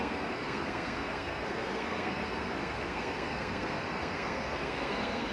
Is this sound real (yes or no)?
no